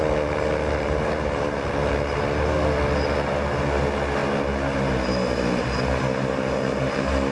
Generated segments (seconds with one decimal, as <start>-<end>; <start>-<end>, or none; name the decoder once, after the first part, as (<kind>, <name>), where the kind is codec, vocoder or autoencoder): none